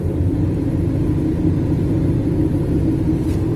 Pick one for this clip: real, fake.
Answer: fake